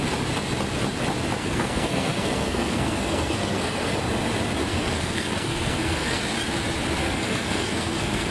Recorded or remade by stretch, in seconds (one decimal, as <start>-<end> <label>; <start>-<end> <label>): 0.0-1.4 recorded; 1.4-4.0 remade; 4.0-4.7 recorded; 4.7-6.2 remade; 6.2-7.0 recorded; 7.0-8.3 remade